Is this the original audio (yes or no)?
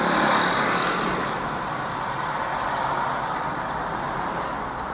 yes